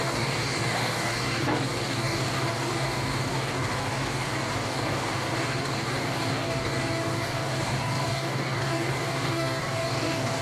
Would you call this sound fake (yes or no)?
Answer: yes